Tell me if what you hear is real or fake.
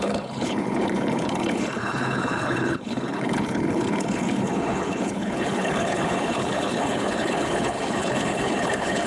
fake